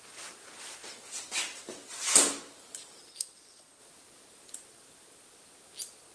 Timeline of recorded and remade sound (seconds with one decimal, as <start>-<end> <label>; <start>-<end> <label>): 0.0-3.1 recorded; 3.1-3.8 remade; 3.8-6.1 recorded